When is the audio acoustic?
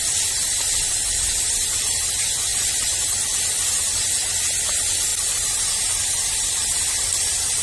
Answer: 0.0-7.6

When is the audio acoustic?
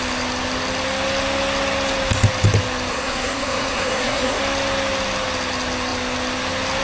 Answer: 0.0-2.9; 4.4-6.8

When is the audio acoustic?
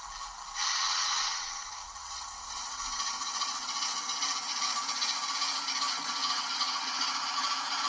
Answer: 0.0-0.8; 4.2-6.2; 7.2-7.9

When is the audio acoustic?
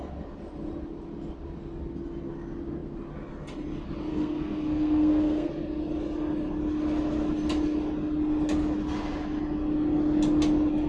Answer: 0.0-4.1; 5.5-10.9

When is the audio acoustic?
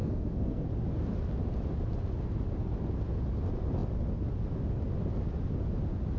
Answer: 0.7-6.2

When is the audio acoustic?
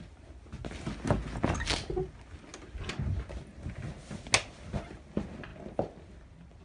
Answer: 0.0-6.6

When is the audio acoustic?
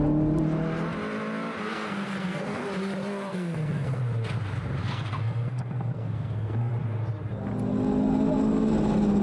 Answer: 0.0-1.7; 2.6-3.3; 4.0-4.8; 6.7-9.2